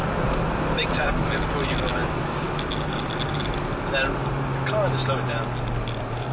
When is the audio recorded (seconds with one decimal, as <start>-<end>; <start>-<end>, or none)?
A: 0.0-6.3